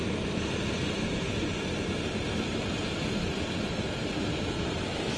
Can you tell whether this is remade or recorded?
recorded